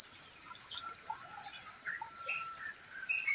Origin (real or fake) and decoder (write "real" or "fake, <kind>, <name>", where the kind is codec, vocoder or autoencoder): real